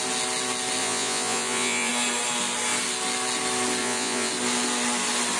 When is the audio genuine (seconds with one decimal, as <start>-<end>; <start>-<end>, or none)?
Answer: 0.0-0.8; 1.9-3.8; 4.3-5.4